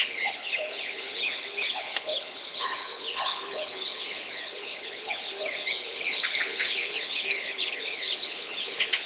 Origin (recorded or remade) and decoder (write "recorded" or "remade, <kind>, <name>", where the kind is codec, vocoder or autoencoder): remade, codec, HILCodec